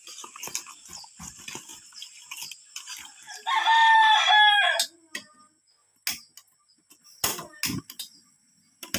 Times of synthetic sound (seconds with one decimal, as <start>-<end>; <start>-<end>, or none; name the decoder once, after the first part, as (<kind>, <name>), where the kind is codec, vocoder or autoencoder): none